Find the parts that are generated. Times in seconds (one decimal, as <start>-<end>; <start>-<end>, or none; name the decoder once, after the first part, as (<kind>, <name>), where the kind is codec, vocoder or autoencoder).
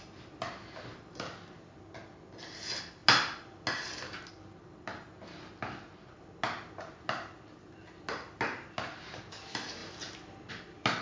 none